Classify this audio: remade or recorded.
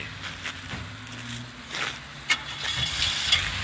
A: recorded